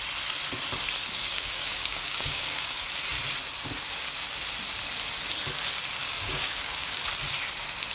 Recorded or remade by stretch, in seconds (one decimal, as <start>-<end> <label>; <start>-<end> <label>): 0.0-1.2 recorded; 1.2-2.6 remade; 2.6-6.0 recorded; 6.0-7.0 remade; 7.0-7.9 recorded